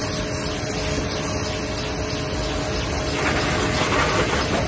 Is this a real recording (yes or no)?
yes